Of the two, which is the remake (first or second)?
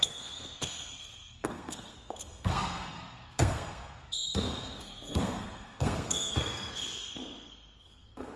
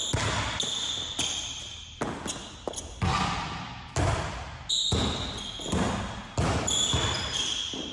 first